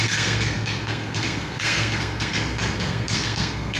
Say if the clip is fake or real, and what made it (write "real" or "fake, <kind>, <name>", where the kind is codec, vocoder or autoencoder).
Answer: fake, codec, SNAC